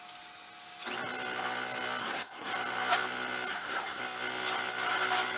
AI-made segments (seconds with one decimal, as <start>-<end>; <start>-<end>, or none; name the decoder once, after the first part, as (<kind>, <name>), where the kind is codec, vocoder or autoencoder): 2.0-2.5 (codec, SNAC); 3.5-4.0